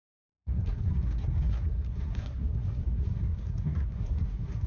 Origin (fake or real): fake